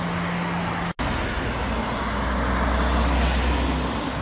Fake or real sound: real